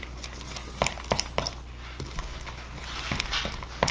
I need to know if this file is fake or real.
real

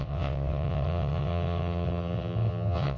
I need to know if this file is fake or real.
fake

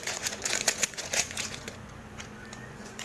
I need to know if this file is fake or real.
fake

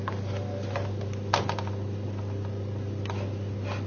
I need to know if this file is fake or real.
real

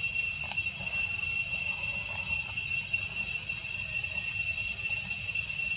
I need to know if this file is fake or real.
real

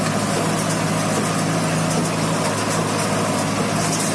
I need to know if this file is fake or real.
real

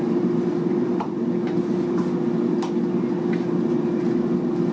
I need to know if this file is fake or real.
real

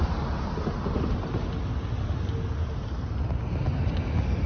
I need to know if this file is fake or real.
real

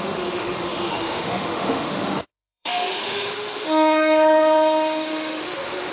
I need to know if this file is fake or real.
fake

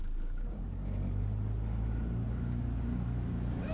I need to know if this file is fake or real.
real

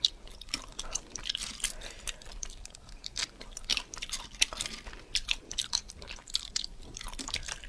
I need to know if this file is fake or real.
fake